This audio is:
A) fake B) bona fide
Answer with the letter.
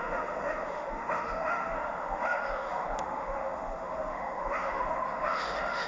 A